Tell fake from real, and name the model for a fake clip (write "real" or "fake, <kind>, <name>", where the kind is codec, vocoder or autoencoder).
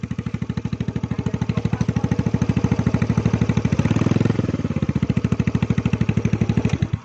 real